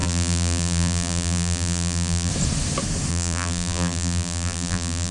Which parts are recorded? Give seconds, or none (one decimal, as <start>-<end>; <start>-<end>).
2.3-3.1